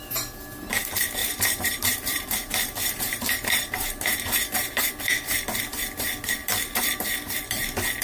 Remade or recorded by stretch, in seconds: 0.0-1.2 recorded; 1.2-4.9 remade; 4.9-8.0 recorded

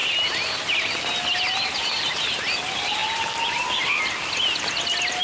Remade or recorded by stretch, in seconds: 0.0-5.2 recorded

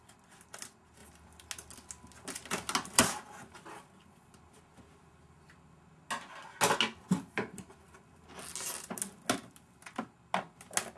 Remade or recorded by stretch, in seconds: 0.0-11.0 recorded

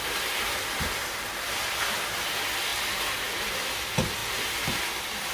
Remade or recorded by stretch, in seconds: 0.0-5.3 recorded

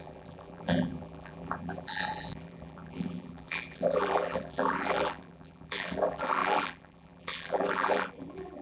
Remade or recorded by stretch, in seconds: 0.0-8.6 remade

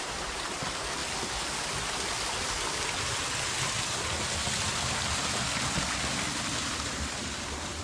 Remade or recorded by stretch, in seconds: 0.0-6.6 recorded; 6.6-7.8 remade

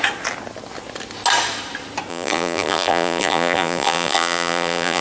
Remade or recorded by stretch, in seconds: 0.0-2.1 recorded; 2.1-5.0 remade